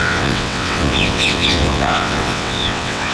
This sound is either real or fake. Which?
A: fake